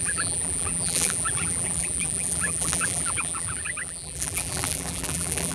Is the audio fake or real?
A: fake